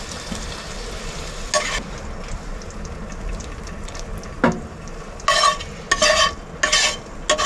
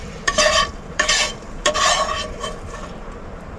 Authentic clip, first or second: first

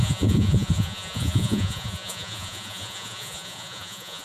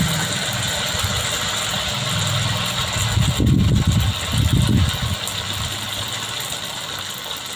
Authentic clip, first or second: second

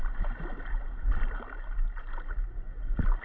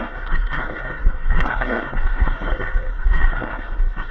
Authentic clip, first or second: first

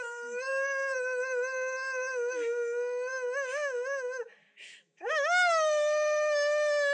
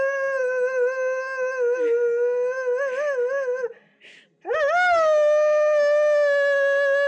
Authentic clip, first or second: second